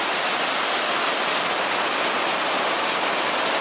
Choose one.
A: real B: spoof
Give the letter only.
A